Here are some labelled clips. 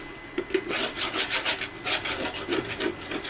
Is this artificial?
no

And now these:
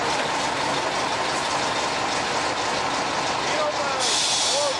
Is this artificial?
no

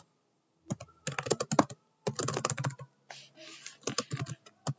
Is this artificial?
no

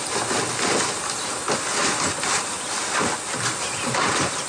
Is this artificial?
no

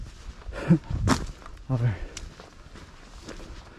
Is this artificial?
no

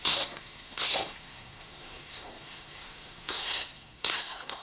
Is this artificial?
yes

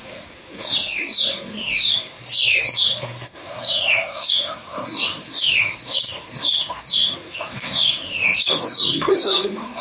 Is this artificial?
yes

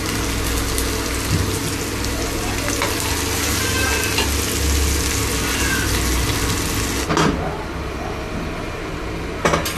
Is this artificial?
no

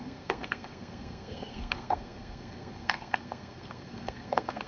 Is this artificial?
yes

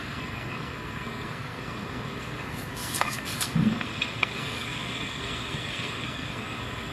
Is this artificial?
yes